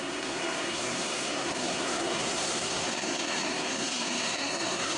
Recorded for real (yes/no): no